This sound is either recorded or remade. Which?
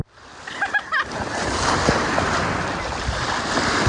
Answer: recorded